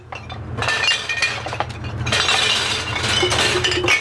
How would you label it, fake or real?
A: real